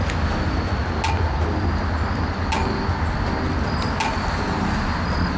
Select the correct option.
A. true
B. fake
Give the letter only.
A